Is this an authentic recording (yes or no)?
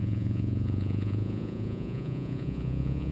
no